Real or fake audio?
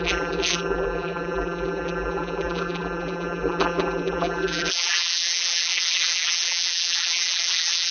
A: fake